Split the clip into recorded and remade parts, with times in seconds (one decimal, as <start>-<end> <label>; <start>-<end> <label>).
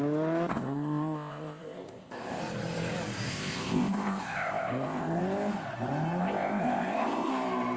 0.0-0.5 recorded; 0.5-2.4 remade; 2.4-3.3 recorded; 3.3-5.2 remade; 5.2-6.2 recorded; 6.2-7.3 remade; 7.3-7.8 recorded